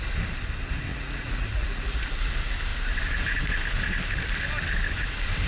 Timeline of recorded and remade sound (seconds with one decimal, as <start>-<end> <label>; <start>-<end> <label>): 0.0-0.9 recorded; 0.9-2.1 remade; 2.1-5.5 recorded